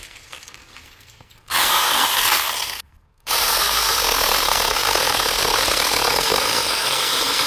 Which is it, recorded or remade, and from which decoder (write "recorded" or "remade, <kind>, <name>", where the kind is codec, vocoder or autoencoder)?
remade, codec, SNAC